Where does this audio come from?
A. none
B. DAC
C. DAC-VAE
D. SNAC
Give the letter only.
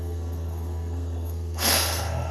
D